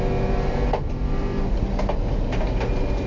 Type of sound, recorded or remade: recorded